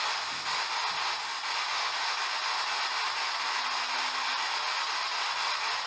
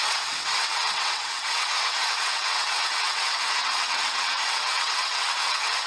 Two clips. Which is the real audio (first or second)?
first